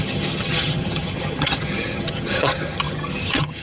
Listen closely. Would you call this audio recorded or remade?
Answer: remade